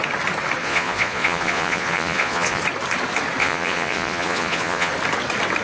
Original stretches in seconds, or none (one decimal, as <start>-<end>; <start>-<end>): 0.0-0.6; 2.6-3.4; 4.9-5.6

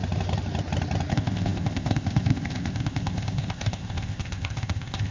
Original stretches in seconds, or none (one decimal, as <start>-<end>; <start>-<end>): 0.0-1.1

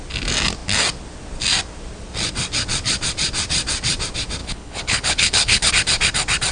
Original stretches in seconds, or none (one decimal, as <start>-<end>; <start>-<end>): 0.0-4.4; 5.7-6.5

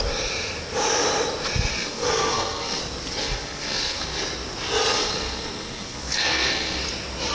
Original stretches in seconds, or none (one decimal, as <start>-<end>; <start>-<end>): 0.0-1.7; 2.8-3.2; 4.2-4.9; 6.8-7.3

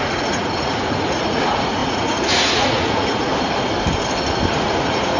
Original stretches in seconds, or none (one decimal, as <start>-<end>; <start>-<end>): 3.3-4.6

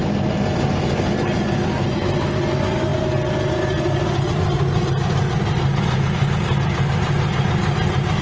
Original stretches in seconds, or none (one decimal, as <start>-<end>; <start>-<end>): 0.0-8.2

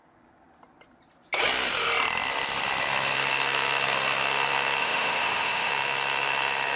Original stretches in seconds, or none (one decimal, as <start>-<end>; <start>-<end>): 0.0-4.8; 5.7-6.8

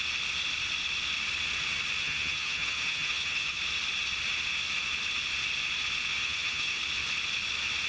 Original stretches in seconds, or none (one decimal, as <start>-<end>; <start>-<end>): 0.0-2.0; 3.6-6.2; 6.8-7.9